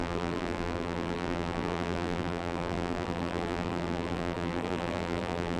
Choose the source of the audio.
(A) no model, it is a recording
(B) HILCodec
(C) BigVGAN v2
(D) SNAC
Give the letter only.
C